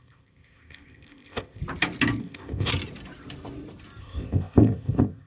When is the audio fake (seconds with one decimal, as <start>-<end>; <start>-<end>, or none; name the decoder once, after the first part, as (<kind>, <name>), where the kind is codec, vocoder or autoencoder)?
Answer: 0.0-1.6 (codec, ZipCodec); 2.2-2.7; 4.0-5.3